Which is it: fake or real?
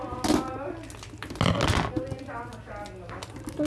real